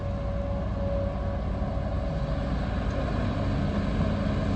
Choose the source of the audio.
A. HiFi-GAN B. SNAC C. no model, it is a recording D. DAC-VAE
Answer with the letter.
C